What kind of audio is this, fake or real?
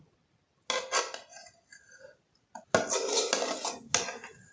real